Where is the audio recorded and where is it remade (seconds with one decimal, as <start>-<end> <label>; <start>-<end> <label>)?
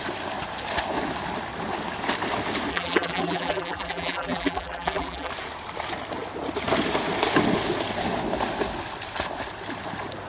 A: 0.0-2.7 recorded; 2.7-5.3 remade; 5.3-10.3 recorded